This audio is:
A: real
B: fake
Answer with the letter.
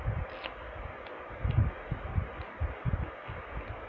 A